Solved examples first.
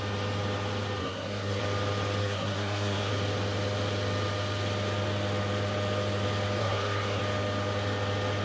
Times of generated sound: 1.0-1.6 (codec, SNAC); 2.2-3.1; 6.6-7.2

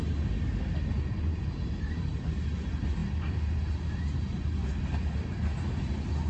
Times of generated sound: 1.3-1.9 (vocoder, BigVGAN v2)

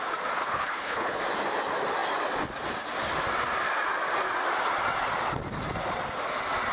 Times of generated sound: 0.4-1.2 (codec, HILCodec)

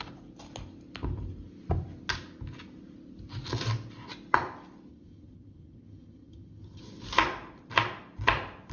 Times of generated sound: 4.9-6.8 (vocoder, HiFi-GAN)